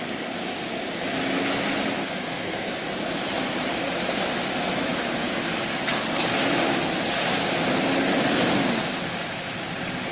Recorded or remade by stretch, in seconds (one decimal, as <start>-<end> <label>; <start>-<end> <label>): 0.0-2.0 recorded; 2.0-2.7 remade; 2.7-10.1 recorded